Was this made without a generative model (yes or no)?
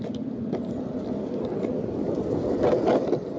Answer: yes